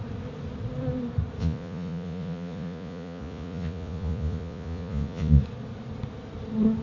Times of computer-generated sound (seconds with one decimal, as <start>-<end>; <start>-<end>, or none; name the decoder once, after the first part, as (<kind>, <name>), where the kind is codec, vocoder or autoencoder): 1.4-5.4 (vocoder, Vocos)